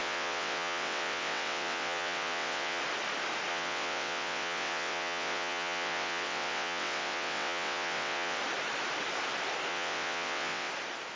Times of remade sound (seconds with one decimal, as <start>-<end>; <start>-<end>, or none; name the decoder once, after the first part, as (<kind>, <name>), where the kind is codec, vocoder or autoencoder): 0.0-2.8 (vocoder, WaveNeXt); 3.5-8.4; 9.7-10.7